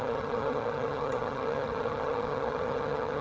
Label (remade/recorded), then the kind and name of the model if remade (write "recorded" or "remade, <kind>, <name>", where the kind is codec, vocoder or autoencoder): remade, vocoder, HiFi-GAN